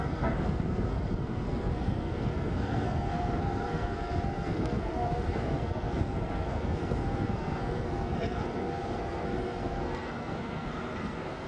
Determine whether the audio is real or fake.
fake